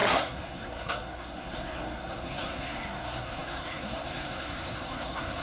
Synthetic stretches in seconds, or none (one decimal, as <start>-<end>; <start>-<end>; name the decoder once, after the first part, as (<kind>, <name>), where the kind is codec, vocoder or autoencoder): 0.0-5.4 (codec, SNAC)